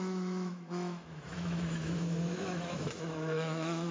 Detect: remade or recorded remade